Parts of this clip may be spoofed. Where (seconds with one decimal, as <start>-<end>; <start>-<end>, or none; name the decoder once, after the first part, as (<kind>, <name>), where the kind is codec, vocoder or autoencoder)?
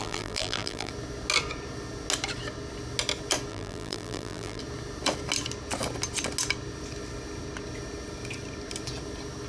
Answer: 0.0-0.9 (vocoder, BigVGAN v2); 3.5-4.6